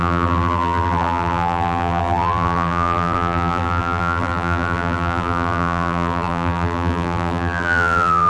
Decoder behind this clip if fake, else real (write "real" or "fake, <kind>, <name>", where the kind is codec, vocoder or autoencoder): fake, vocoder, BigVGAN v2